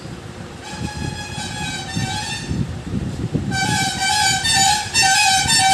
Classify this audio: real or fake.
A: fake